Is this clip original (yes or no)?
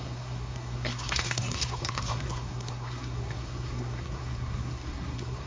no